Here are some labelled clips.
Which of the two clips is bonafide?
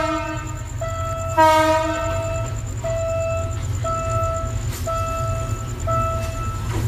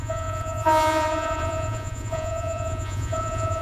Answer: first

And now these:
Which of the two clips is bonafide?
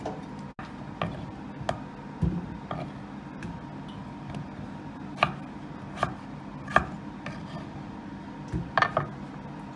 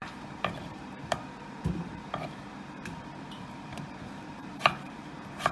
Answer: first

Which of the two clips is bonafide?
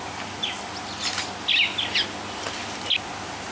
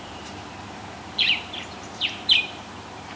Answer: first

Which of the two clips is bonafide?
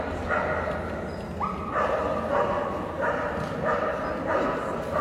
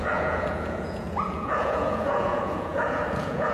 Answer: first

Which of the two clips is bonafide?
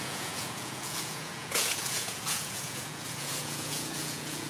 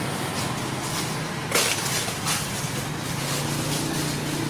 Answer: second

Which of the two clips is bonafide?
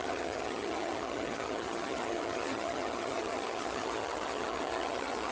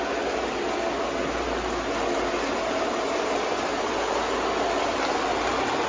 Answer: second